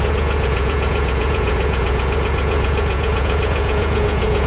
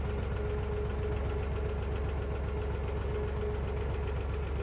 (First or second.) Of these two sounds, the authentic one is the second